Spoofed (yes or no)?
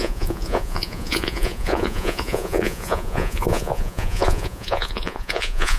yes